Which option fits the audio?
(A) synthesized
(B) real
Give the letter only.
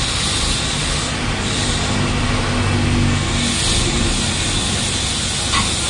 B